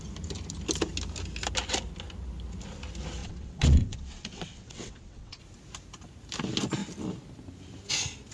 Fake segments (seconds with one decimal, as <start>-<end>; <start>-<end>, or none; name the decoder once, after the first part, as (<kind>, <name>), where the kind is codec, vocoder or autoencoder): 3.2-5.4 (vocoder, WaveNeXt)